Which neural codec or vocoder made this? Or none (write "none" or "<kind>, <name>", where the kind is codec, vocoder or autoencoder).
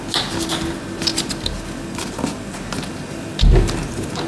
none